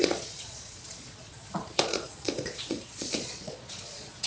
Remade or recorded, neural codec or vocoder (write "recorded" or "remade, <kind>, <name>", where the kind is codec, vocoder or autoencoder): remade, vocoder, Vocos